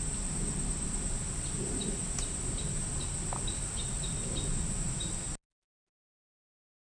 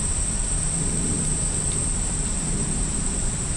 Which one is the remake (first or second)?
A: second